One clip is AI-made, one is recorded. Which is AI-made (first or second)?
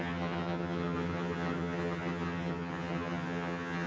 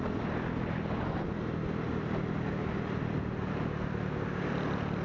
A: first